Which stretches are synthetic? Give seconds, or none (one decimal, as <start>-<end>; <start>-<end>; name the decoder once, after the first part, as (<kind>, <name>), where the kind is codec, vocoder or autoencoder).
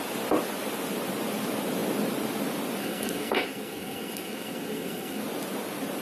2.8-5.2 (codec, SNAC)